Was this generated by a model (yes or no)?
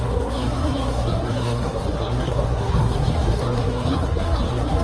yes